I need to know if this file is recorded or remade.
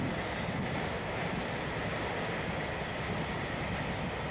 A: recorded